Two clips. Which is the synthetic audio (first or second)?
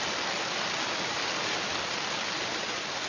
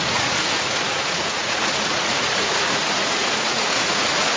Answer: second